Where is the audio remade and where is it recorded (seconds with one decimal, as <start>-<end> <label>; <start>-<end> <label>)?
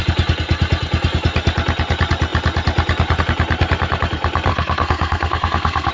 0.0-4.5 recorded; 4.5-5.9 remade